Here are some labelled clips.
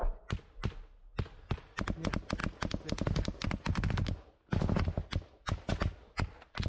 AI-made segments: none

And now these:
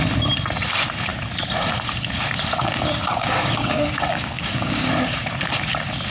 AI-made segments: 3.1-4.9 (codec, DAC)

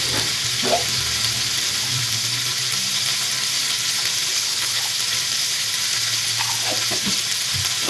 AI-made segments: 4.3-4.8 (codec, HILCodec)

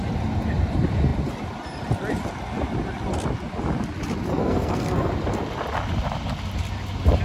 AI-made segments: 4.3-5.1 (codec, SNAC)

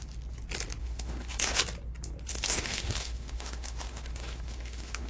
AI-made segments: 0.8-1.6 (autoencoder, DAC-VAE); 2.3-5.1